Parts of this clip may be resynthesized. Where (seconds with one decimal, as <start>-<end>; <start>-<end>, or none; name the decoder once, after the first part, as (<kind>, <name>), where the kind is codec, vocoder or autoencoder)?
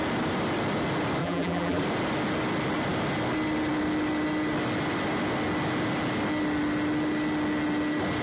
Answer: 1.2-1.8 (vocoder, BigVGAN v2)